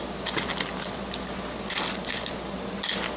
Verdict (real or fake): real